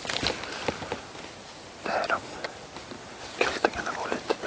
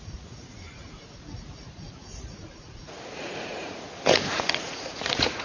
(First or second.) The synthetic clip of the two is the second